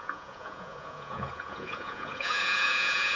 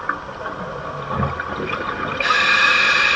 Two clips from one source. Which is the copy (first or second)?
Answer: first